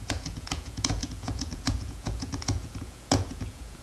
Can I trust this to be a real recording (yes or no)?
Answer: no